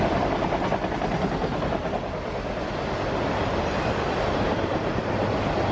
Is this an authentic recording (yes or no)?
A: yes